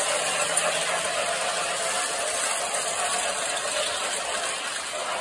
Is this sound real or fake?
real